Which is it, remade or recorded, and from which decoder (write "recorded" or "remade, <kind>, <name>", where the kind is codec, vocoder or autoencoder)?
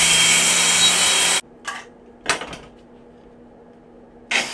recorded